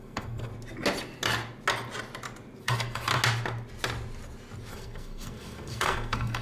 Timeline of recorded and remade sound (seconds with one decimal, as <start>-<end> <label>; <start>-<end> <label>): 0.0-0.5 remade; 0.5-2.6 recorded; 2.6-3.1 remade; 3.1-4.7 recorded; 4.7-6.4 remade